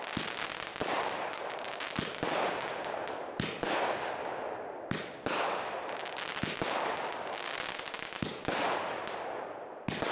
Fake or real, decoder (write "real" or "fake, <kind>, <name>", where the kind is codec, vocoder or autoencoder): real